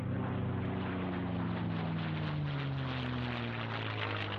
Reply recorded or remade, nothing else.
recorded